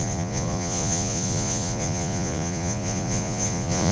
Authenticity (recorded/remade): remade